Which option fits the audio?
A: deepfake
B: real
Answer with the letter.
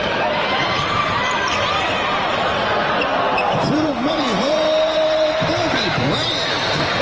A